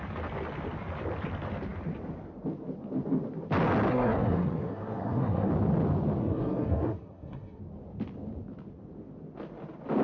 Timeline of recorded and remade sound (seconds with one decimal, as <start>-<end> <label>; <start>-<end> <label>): 0.0-3.9 recorded; 3.9-5.5 remade; 5.5-6.2 recorded; 6.2-7.6 remade; 7.6-10.0 recorded